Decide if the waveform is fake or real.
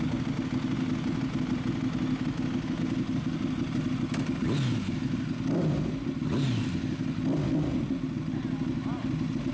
real